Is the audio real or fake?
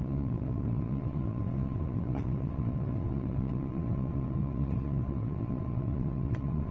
fake